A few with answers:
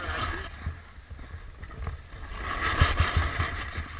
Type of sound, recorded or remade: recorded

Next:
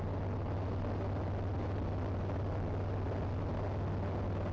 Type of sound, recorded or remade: recorded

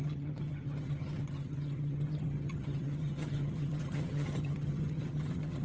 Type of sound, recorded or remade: remade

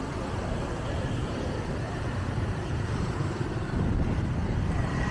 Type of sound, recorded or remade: remade